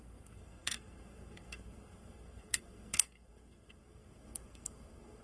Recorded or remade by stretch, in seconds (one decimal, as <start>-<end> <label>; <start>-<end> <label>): 0.0-5.2 remade